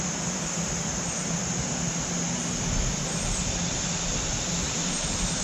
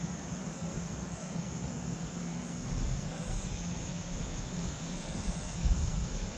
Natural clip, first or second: first